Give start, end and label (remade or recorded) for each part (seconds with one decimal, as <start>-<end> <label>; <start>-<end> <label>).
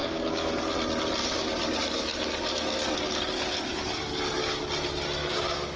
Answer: 0.0-0.6 remade; 0.6-1.2 recorded; 1.2-4.7 remade; 4.7-5.2 recorded; 5.2-5.8 remade